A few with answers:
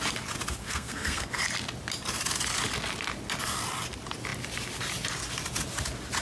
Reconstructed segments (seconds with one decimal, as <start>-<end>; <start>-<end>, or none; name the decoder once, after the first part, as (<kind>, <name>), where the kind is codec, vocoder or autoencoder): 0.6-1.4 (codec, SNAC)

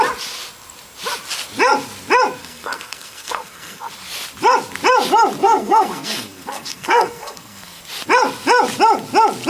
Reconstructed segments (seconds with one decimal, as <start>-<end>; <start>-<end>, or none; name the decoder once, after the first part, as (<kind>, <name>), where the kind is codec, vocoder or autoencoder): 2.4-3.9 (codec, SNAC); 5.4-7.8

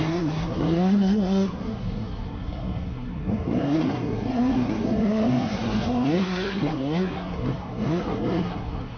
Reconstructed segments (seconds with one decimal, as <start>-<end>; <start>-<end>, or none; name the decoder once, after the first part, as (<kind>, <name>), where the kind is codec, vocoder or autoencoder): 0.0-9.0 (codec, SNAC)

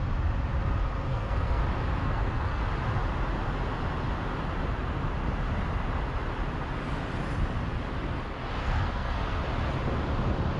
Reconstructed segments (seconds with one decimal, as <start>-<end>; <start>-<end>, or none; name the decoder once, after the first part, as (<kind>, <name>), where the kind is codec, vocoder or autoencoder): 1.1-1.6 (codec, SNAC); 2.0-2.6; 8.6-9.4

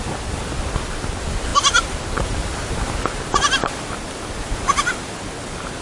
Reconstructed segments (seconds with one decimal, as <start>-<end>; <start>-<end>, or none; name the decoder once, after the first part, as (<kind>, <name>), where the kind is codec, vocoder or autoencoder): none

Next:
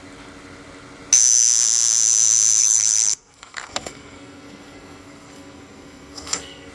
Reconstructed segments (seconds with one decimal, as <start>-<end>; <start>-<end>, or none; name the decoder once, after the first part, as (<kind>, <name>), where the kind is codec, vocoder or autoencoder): 2.6-6.7 (codec, SNAC)

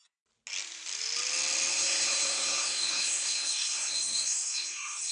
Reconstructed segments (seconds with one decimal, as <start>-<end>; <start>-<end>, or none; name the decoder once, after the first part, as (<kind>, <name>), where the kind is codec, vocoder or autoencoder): 1.7-5.1 (codec, SNAC)